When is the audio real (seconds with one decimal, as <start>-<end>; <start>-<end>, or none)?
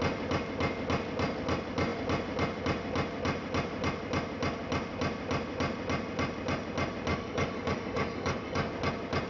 0.0-7.1; 8.7-9.3